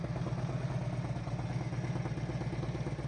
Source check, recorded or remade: recorded